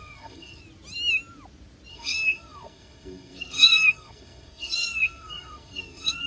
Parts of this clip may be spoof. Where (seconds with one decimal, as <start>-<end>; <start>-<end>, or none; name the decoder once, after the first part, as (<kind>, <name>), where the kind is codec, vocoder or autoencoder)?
0.0-0.6 (codec, SNAC); 1.9-6.3

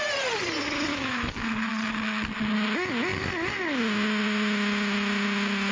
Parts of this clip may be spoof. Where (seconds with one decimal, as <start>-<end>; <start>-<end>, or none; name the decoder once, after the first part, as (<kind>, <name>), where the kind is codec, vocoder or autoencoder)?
0.9-1.7 (autoencoder, DAC-VAE)

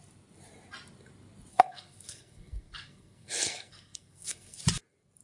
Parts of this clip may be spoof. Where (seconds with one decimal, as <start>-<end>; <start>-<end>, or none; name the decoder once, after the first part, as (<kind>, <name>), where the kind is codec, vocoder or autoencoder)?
1.5-4.6 (codec, SNAC)

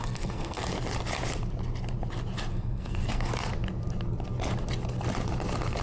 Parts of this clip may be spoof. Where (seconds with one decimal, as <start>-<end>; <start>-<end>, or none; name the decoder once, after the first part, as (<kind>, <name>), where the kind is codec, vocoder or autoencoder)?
0.0-0.7 (codec, SNAC); 2.5-3.3

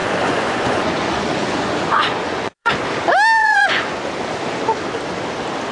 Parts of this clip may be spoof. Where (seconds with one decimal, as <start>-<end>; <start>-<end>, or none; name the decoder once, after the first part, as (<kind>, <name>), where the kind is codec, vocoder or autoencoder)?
0.0-2.7 (vocoder, Vocos); 3.4-4.0

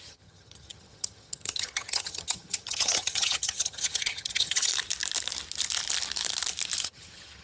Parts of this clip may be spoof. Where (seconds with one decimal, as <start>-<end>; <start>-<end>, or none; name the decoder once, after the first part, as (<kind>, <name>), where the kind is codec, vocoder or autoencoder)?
0.0-4.7 (vocoder, HiFi-GAN); 6.8-7.4